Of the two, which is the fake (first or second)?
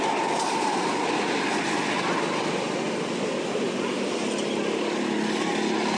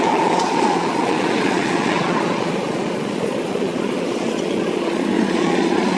second